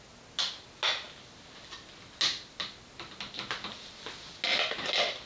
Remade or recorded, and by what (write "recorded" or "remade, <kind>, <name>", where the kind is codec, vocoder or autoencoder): recorded